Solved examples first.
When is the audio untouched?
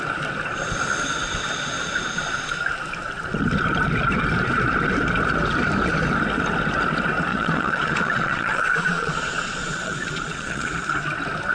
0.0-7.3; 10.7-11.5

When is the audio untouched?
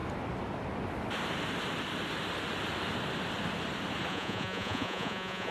0.0-4.1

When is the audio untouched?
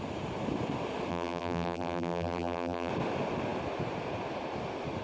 0.0-1.1; 2.9-5.0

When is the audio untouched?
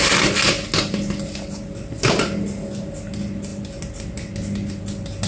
0.0-5.3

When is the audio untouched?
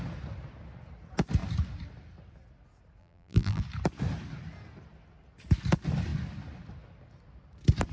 0.0-3.0; 3.6-7.9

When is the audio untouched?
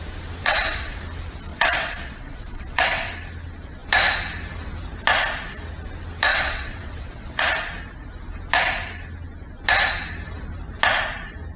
0.0-0.4; 1.0-1.5; 3.1-6.3; 7.4-11.6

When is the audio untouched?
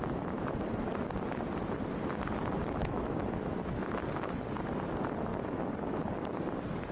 0.0-2.8; 3.5-5.3; 6.0-6.9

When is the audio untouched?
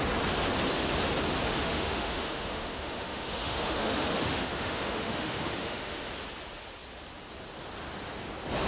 0.0-1.6; 6.1-8.7